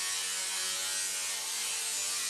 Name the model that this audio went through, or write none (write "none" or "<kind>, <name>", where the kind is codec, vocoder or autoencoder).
none